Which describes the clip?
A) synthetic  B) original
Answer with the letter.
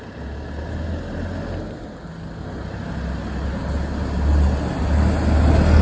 B